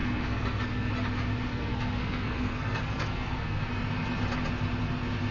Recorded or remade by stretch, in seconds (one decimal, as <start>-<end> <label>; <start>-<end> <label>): 0.0-0.9 remade; 0.9-1.5 recorded; 1.5-3.7 remade; 3.7-5.3 recorded